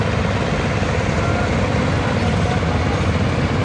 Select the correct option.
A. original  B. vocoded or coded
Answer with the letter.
A